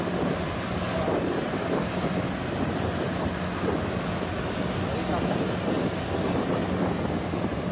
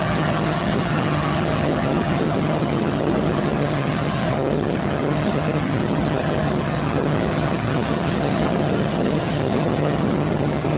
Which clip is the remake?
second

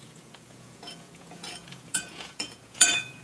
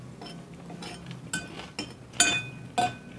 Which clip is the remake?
first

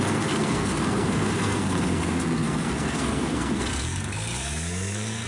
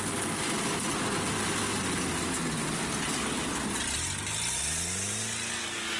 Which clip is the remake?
first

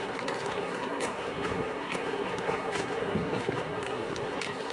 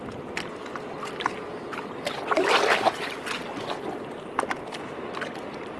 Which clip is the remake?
first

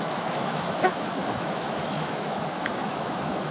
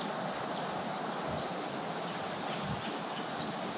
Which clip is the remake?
first